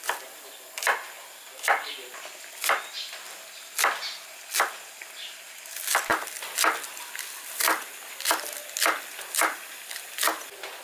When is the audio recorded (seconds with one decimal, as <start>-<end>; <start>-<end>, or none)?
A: 0.0-10.8